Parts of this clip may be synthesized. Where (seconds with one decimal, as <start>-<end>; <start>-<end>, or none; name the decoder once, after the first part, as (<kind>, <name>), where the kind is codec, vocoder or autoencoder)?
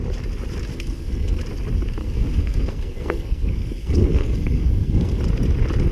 0.7-1.4 (codec, SNAC); 2.0-5.2